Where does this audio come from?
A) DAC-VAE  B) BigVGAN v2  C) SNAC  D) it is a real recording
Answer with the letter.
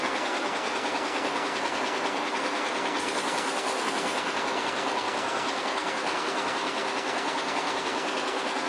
C